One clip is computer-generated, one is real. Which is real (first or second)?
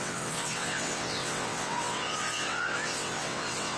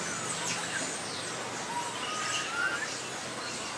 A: second